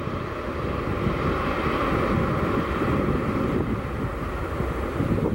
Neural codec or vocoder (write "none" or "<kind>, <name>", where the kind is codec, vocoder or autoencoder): none